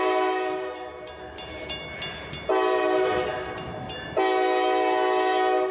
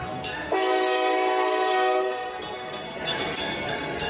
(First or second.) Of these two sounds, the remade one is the second